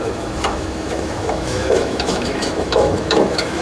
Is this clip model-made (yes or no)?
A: yes